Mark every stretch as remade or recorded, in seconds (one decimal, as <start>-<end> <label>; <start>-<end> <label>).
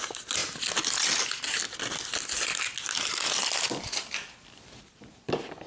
0.0-5.7 recorded